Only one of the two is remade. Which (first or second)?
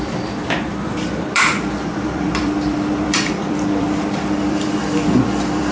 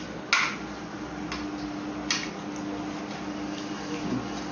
first